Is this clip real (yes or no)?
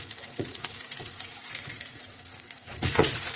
no